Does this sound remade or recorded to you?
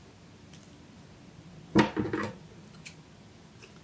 recorded